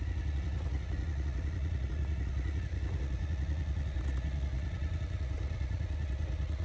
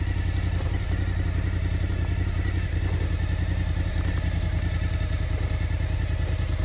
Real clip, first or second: second